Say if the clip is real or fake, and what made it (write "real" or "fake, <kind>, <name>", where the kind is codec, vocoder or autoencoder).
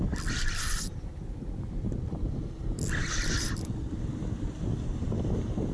fake, vocoder, BigVGAN v2